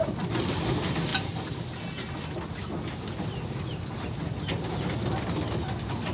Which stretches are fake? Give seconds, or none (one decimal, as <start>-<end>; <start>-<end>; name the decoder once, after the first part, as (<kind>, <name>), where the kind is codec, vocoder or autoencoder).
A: none